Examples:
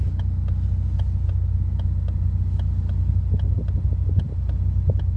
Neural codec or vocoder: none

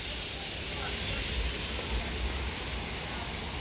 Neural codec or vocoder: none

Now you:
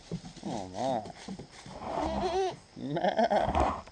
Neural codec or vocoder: none